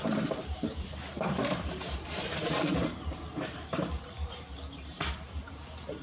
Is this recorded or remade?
remade